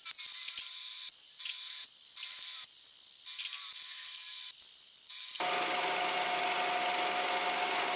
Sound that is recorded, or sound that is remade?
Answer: recorded